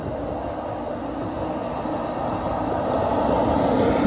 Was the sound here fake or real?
real